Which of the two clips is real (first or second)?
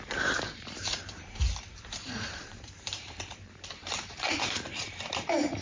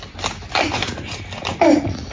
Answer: second